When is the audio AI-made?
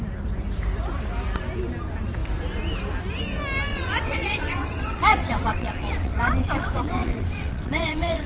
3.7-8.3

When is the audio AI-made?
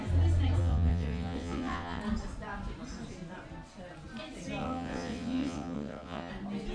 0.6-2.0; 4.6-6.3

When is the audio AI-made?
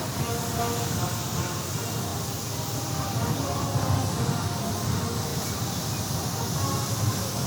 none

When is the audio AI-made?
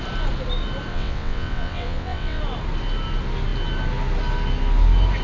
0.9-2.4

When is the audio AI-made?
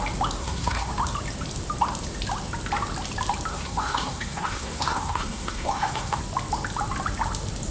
0.4-0.9; 3.5-6.2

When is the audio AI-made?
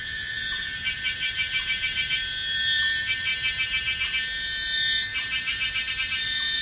0.0-3.3; 4.2-6.6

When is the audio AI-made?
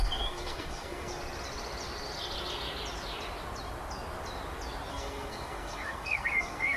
0.0-1.1; 4.9-6.8